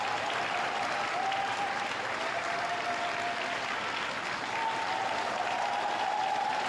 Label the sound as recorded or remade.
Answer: recorded